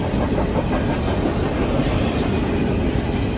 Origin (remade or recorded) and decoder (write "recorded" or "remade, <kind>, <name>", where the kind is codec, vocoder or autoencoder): recorded